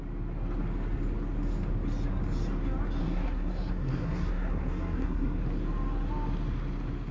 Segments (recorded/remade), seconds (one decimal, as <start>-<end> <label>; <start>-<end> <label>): 0.0-3.0 recorded; 3.0-5.4 remade; 5.4-7.1 recorded